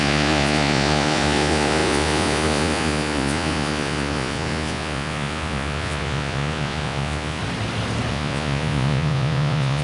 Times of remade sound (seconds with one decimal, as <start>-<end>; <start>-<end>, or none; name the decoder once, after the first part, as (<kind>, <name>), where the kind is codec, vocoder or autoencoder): 0.0-7.4 (vocoder, Vocos); 8.1-9.8